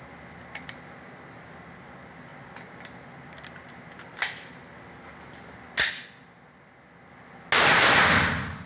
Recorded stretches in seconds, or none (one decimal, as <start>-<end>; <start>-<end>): 0.0-8.7